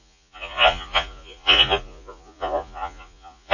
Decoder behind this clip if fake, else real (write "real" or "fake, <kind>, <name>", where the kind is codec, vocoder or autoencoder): fake, vocoder, Vocos